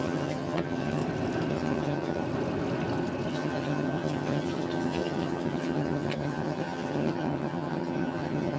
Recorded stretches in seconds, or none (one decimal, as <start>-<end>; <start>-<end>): 1.0-1.5; 2.2-3.3